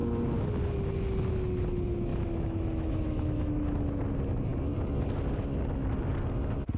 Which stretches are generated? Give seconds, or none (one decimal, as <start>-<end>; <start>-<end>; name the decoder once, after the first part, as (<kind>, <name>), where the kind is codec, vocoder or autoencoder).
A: 2.1-4.0 (autoencoder, DAC-VAE)